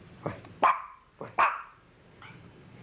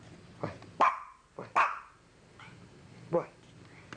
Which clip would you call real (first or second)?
second